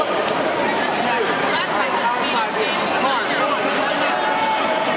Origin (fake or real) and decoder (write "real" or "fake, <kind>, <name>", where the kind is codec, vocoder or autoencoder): real